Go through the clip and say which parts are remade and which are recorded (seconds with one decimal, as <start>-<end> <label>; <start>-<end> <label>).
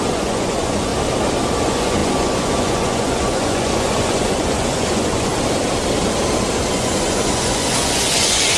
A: 0.0-0.9 remade; 0.9-1.6 recorded; 1.6-5.3 remade; 5.3-6.7 recorded; 6.7-8.6 remade